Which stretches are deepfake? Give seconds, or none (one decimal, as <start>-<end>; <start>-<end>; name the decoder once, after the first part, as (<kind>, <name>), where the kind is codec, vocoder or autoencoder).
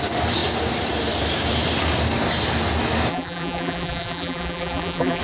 3.1-5.2 (vocoder, BigVGAN v2)